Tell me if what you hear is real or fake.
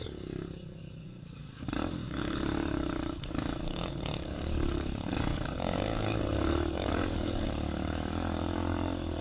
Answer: fake